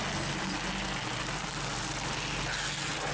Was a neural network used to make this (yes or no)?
no